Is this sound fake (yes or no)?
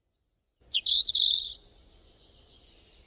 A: yes